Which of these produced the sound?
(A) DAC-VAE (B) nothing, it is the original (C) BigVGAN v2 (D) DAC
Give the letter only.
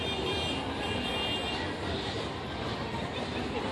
B